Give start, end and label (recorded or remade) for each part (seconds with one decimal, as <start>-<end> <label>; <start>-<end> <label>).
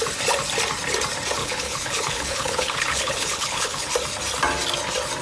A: 0.0-1.4 recorded; 1.4-3.9 remade; 3.9-5.2 recorded